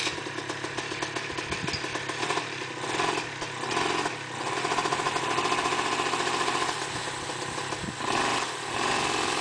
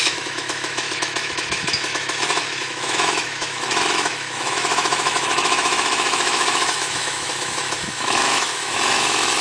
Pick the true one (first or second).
first